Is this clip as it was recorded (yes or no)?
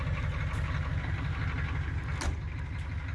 yes